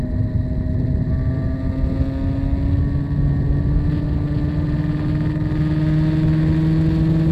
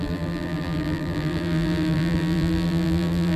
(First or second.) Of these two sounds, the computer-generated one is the second